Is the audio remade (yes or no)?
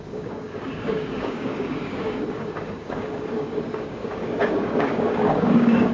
yes